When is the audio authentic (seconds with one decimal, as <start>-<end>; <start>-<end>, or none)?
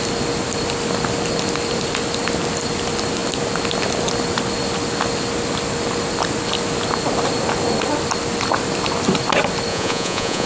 0.0-9.7